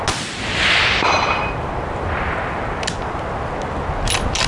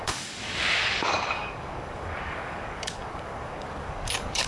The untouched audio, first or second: first